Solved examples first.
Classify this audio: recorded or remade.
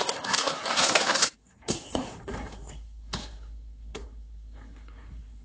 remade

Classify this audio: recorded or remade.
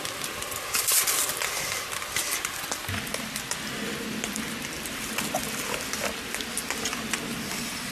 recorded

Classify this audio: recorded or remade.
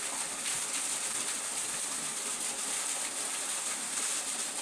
recorded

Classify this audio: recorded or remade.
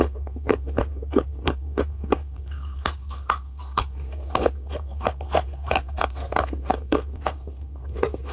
remade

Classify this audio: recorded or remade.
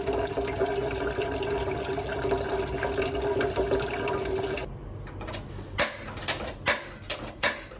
recorded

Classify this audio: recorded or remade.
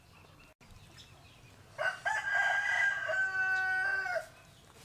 recorded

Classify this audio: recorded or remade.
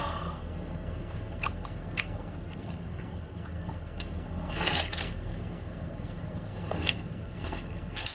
remade